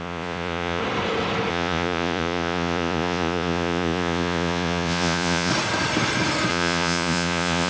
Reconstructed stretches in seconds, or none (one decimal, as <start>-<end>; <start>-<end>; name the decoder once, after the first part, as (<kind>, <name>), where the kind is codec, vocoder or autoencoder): 0.0-0.8 (vocoder, Vocos); 1.5-5.5; 6.5-7.7